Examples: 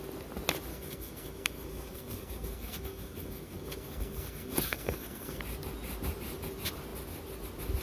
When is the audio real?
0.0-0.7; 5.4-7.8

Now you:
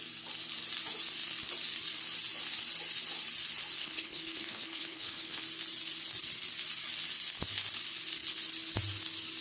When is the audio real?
0.0-3.8; 5.4-9.4